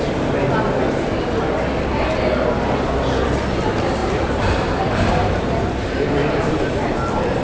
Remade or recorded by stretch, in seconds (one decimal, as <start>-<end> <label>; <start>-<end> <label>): 0.0-4.0 recorded; 4.0-5.6 remade; 5.6-7.4 recorded